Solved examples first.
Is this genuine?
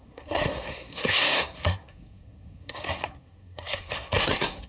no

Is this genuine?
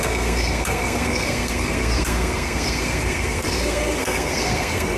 no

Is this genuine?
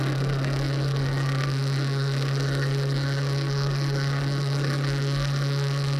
no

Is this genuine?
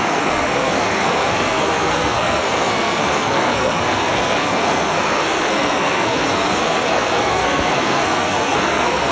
no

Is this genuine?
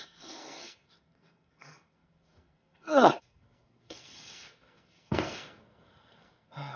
no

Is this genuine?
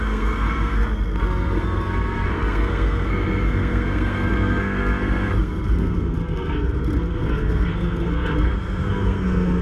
no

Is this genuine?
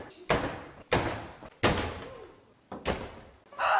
yes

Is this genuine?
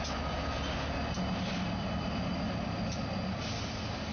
yes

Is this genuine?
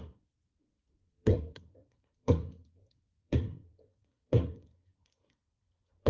no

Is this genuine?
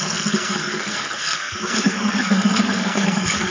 no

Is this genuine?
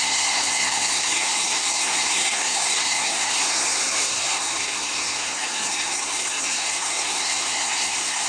no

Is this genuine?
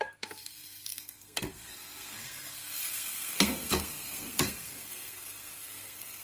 no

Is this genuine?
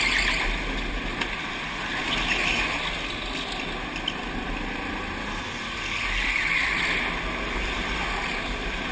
yes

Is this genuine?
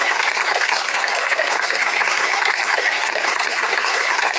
no